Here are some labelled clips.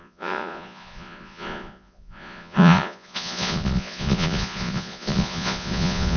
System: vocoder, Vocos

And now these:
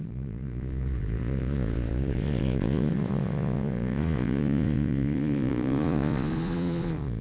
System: vocoder, Vocos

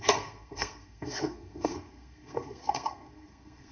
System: codec, SNAC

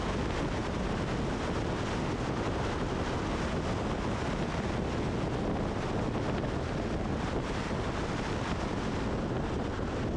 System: none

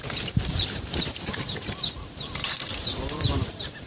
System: vocoder, BigVGAN v2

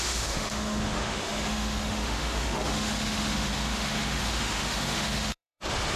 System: autoencoder, DAC-VAE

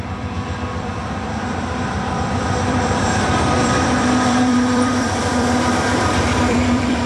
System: vocoder, BigVGAN v2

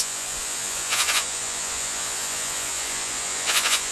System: vocoder, Vocos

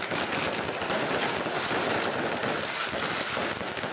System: none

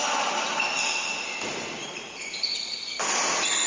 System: none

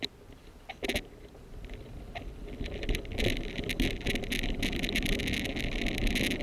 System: none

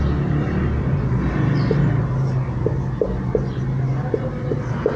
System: none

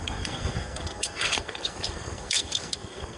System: codec, SNAC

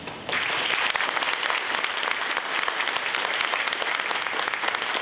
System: none